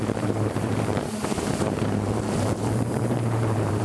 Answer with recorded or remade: remade